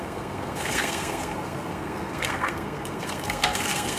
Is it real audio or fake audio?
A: fake